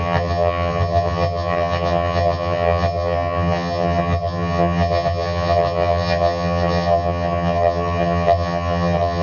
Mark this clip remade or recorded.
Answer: remade